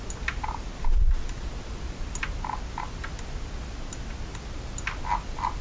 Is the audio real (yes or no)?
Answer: yes